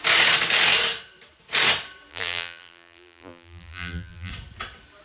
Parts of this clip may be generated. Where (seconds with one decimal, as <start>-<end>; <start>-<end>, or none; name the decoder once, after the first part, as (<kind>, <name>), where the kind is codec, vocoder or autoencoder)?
2.1-4.3 (vocoder, BigVGAN v2)